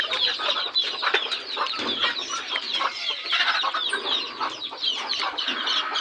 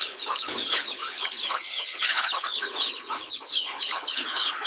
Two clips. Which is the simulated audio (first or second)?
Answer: second